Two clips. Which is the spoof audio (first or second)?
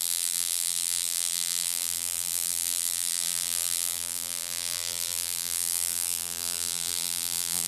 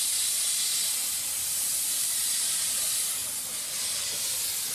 first